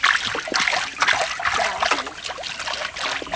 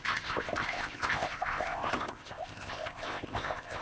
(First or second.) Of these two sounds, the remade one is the second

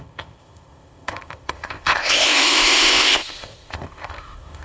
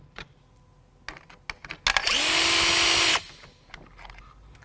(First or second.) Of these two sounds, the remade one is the first